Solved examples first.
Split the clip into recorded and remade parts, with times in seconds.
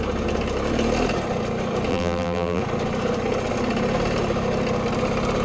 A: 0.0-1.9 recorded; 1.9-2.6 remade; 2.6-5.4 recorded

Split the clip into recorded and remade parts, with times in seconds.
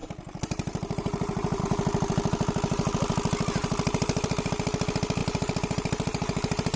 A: 0.0-1.6 remade; 1.6-3.6 recorded; 3.6-4.5 remade; 4.5-5.2 recorded; 5.2-6.8 remade